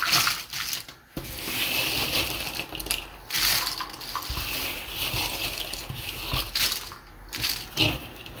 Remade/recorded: recorded